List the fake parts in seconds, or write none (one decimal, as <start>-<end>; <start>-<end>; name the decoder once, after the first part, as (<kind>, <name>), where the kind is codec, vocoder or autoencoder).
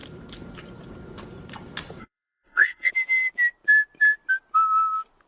2.0-2.9 (codec, SNAC)